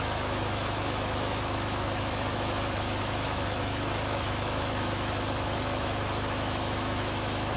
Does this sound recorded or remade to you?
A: remade